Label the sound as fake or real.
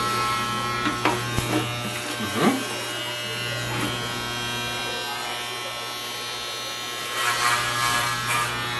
real